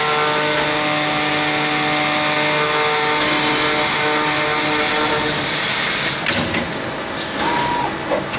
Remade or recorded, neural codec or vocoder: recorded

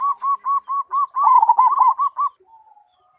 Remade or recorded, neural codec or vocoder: recorded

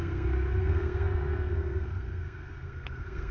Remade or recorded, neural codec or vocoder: remade, codec, SNAC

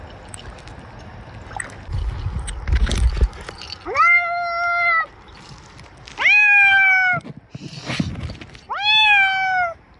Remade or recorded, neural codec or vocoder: recorded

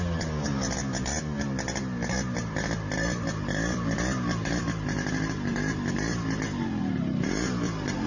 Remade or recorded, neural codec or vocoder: recorded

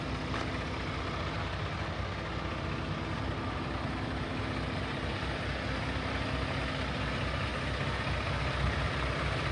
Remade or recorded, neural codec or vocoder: recorded